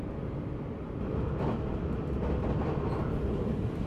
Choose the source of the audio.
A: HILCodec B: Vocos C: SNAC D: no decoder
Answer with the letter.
D